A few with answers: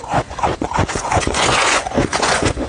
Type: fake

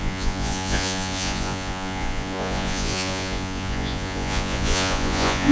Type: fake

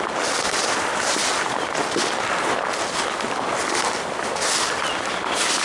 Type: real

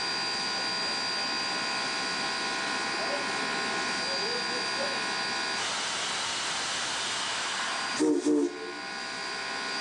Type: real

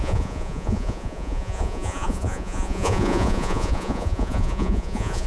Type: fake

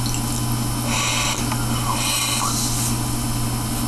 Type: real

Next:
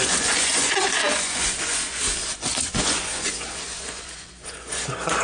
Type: fake